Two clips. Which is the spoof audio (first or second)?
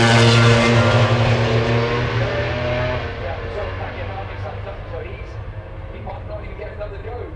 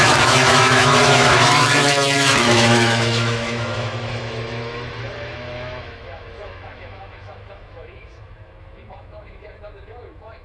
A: second